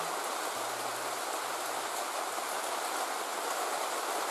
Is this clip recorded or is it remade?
recorded